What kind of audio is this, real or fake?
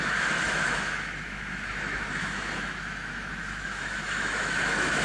fake